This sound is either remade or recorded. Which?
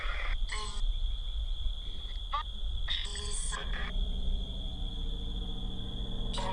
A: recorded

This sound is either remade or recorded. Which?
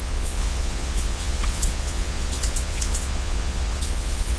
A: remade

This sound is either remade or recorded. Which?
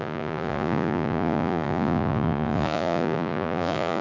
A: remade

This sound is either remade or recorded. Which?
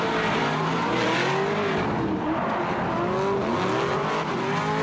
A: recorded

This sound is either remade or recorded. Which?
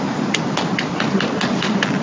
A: recorded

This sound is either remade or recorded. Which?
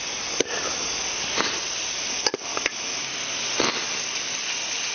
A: recorded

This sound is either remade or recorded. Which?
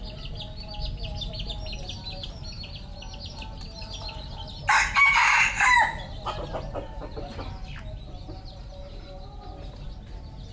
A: recorded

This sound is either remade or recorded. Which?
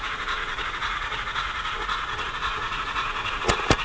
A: remade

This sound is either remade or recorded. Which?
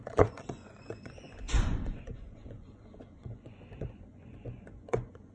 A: remade